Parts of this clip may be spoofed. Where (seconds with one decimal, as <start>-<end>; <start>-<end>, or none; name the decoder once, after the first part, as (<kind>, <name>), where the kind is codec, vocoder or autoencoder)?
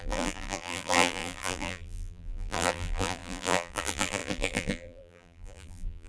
0.0-6.1 (vocoder, BigVGAN v2)